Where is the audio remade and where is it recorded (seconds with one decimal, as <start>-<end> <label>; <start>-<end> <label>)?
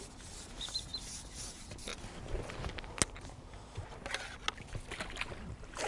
0.0-0.9 remade; 0.9-1.5 recorded; 1.5-1.9 remade; 1.9-5.4 recorded; 5.4-5.9 remade